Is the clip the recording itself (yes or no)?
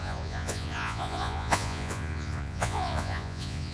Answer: no